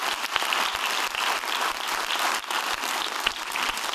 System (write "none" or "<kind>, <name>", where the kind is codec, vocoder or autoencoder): none